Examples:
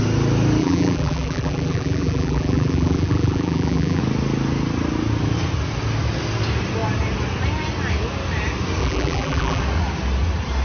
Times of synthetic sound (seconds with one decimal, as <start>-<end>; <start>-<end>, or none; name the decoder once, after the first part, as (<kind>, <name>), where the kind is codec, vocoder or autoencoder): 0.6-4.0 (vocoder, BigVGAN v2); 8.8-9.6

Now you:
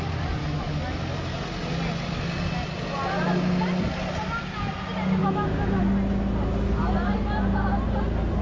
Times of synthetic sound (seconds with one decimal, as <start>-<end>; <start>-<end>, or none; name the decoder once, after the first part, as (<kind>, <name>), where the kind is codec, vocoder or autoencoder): 0.4-1.0 (autoencoder, DAC-VAE); 5.2-5.8

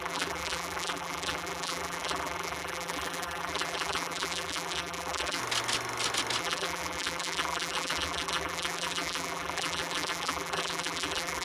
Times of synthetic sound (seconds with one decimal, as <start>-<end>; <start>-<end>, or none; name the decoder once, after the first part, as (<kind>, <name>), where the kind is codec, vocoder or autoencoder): 0.0-5.4 (vocoder, BigVGAN v2); 6.4-11.4

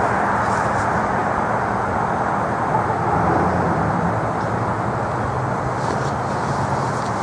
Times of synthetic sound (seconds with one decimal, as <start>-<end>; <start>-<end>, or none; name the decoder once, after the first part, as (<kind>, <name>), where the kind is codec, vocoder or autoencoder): none

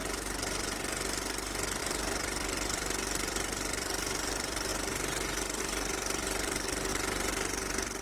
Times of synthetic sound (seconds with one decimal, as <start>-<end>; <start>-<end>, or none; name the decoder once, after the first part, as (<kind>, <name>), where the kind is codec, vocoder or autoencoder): 1.8-4.7 (vocoder, BigVGAN v2); 5.6-6.9

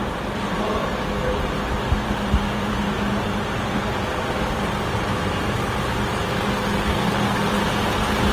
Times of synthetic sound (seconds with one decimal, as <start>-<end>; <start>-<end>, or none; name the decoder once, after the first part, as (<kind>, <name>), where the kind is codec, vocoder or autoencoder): 6.9-7.5 (codec, SNAC)

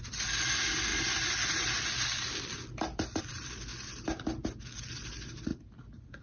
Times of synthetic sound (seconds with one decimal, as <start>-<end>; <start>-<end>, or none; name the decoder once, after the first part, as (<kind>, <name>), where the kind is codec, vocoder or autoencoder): none